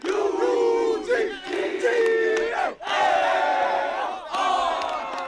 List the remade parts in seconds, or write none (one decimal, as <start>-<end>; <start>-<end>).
1.4-2.0